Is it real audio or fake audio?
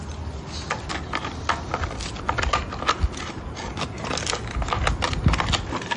real